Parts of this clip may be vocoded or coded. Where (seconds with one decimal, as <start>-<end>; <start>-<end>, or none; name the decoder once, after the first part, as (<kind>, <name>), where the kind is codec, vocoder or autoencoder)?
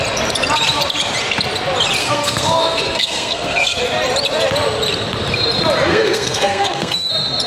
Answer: 2.0-3.8 (codec, SNAC); 5.9-7.1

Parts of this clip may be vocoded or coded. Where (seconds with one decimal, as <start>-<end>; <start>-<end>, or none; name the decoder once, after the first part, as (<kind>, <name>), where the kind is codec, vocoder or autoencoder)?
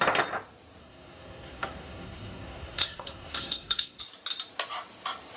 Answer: 0.8-4.0 (codec, SNAC)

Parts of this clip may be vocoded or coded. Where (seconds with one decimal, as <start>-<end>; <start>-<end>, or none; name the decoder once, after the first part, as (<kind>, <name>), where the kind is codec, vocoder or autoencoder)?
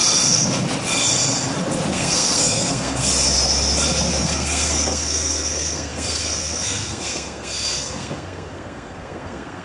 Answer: 1.9-3.1 (codec, SNAC); 4.2-9.6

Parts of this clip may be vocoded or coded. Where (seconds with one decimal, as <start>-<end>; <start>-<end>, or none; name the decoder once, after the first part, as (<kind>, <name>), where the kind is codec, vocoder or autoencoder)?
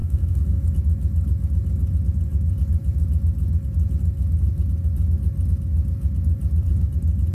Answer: 0.0-0.6 (codec, SNAC)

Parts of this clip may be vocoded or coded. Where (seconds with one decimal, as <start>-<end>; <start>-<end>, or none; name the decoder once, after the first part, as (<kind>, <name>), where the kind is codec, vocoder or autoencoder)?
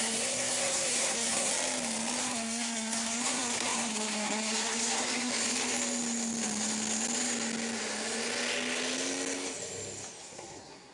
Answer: 0.0-1.5 (codec, SNAC); 2.2-5.3; 10.2-10.9